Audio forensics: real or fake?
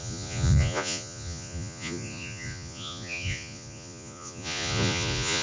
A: fake